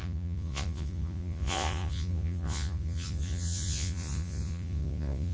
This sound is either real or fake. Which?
fake